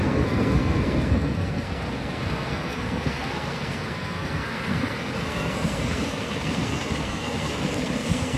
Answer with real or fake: fake